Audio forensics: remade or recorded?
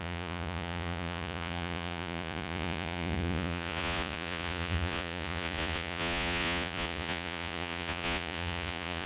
remade